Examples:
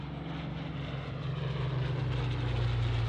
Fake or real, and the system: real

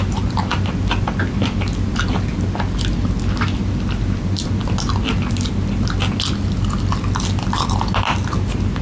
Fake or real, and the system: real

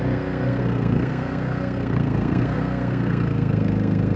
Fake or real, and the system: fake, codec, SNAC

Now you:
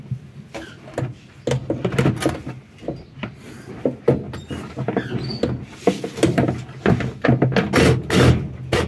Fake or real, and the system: real